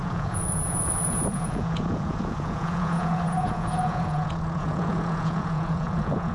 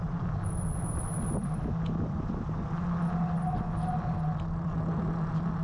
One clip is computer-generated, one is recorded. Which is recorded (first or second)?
second